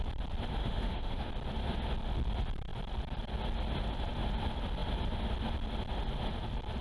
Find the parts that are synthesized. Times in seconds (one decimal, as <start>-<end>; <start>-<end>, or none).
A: 0.6-1.3